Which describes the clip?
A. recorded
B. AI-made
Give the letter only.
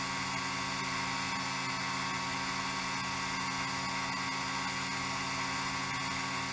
A